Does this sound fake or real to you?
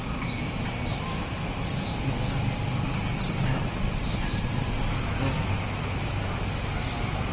real